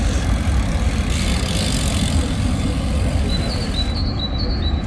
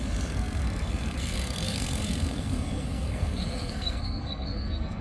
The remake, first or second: second